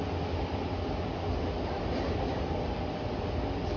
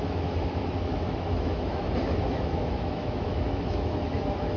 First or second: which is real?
first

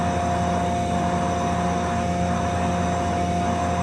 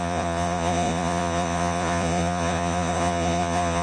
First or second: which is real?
first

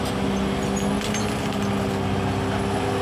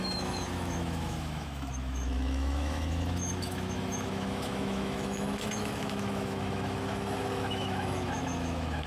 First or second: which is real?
first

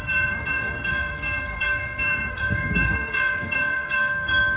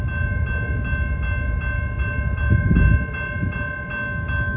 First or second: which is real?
second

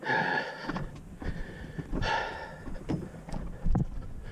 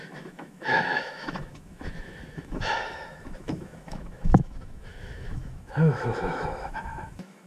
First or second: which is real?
first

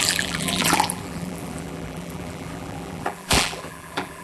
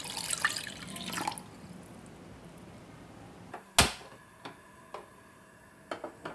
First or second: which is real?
second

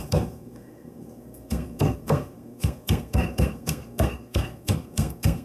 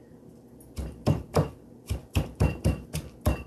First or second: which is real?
second